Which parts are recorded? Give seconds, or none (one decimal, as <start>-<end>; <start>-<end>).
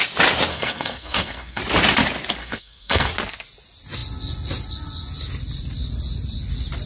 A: 0.0-0.5; 1.6-2.4; 3.1-6.9